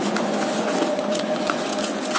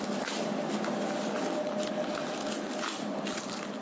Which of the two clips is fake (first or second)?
first